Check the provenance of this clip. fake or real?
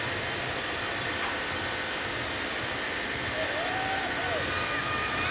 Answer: fake